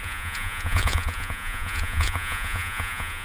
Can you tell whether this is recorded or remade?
remade